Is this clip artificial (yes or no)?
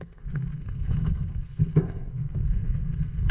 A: yes